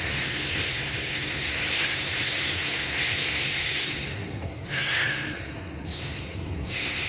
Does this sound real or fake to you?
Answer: fake